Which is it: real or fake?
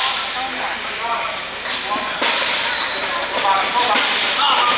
real